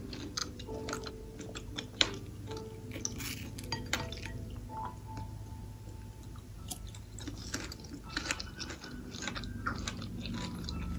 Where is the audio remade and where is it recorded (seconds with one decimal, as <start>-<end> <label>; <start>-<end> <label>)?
0.0-11.0 recorded